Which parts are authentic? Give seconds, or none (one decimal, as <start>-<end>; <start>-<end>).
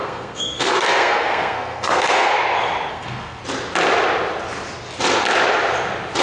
2.4-2.9; 3.4-6.2